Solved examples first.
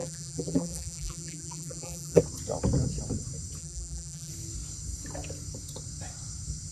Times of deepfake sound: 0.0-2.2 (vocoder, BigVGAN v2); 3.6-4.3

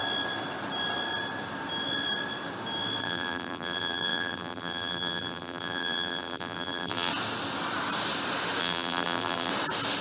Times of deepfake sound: 3.0-7.1 (vocoder, BigVGAN v2); 8.6-9.5

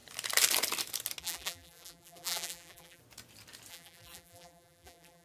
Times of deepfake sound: 1.2-3.0 (vocoder, BigVGAN v2); 3.7-5.2

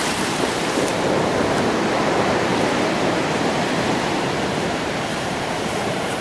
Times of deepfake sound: 0.0-0.9 (vocoder, BigVGAN v2); 1.9-6.2

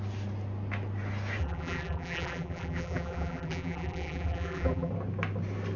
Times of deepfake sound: 1.4-4.9 (vocoder, BigVGAN v2)